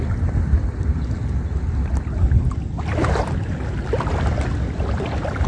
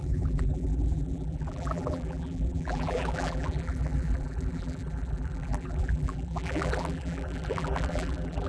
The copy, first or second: second